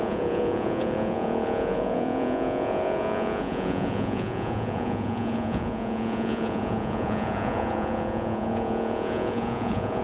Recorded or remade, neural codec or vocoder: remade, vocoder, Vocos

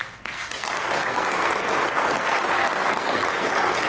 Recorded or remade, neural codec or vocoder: remade, codec, SNAC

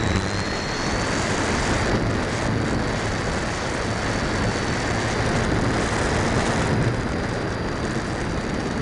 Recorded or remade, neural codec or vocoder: recorded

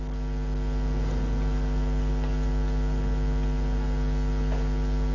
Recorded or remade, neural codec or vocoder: recorded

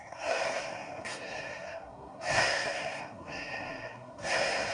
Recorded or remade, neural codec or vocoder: remade, codec, SNAC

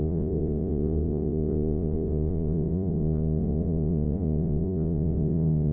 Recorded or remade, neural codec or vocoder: remade, vocoder, Vocos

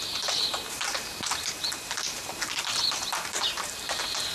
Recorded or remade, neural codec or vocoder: remade, vocoder, BigVGAN v2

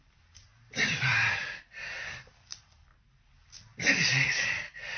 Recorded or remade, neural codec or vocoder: recorded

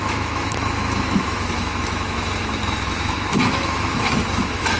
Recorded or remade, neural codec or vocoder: remade, autoencoder, DAC-VAE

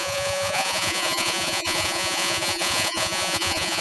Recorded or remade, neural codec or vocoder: remade, vocoder, Vocos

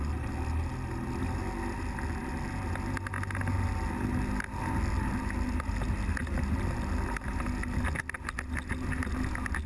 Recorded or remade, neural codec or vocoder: recorded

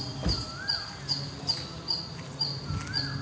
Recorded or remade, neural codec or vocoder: recorded